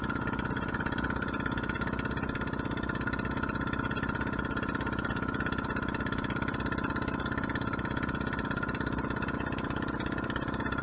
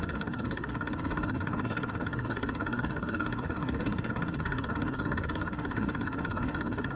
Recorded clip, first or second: first